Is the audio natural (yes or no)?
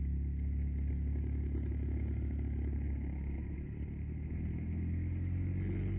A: yes